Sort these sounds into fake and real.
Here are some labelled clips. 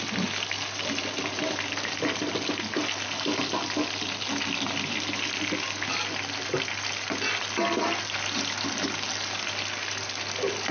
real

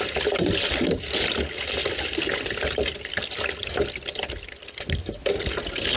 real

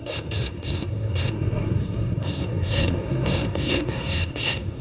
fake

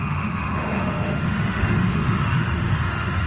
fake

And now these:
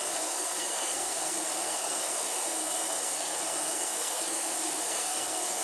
fake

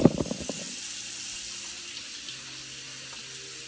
real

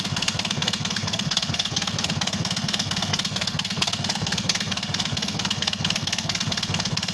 fake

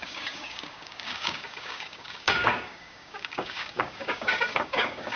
fake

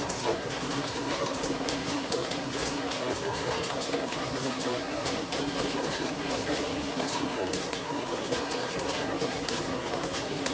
fake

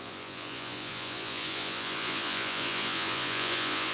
fake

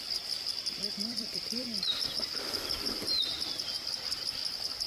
fake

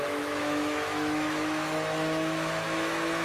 fake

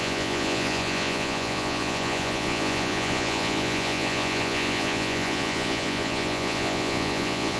fake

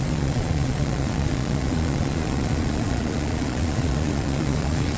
fake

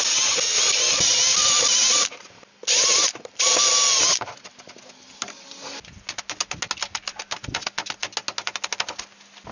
real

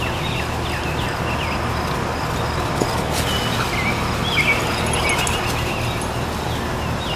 real